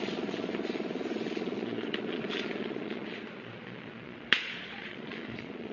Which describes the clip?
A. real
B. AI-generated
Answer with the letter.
B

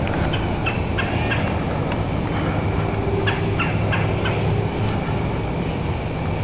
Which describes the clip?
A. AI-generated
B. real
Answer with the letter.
B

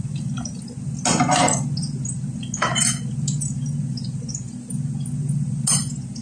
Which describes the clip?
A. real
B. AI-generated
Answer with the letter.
A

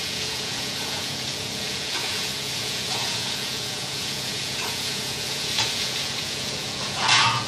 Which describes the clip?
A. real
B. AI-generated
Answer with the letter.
B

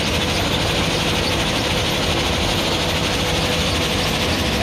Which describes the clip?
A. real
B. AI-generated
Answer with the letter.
A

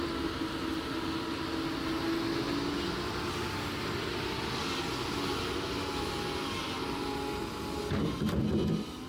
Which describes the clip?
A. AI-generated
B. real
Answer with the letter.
B